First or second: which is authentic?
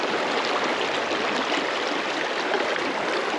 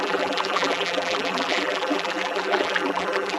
first